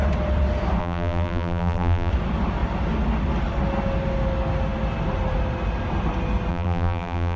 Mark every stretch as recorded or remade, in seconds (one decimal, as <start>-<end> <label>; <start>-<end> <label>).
0.0-0.8 recorded; 0.8-2.1 remade; 2.1-6.5 recorded; 6.5-7.4 remade